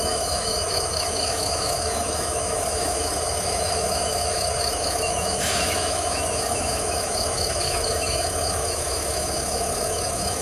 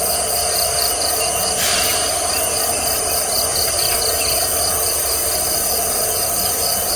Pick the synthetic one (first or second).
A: first